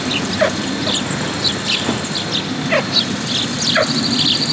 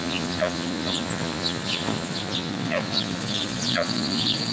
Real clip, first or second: first